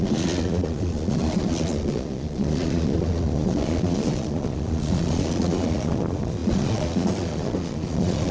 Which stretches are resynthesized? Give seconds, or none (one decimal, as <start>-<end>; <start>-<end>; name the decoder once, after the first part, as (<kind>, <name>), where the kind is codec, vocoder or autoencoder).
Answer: 0.0-8.3 (vocoder, Vocos)

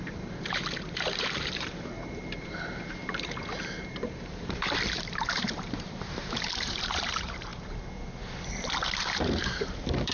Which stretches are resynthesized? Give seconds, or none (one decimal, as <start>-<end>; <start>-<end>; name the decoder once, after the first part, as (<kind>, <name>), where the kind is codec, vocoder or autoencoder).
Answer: 0.0-3.0 (vocoder, BigVGAN v2); 3.7-7.5; 9.0-10.1

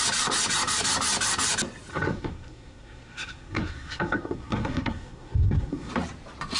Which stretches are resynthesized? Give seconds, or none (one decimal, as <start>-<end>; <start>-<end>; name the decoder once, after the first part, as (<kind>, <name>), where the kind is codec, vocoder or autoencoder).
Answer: 1.9-5.9 (codec, SNAC)